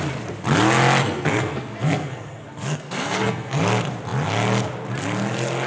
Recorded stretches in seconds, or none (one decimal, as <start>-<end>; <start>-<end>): 0.0-1.0; 3.6-5.7